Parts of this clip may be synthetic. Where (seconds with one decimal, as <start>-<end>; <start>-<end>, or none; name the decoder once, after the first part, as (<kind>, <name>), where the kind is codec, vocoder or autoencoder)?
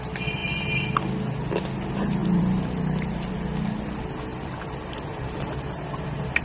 2.2-3.3 (vocoder, BigVGAN v2); 4.3-6.4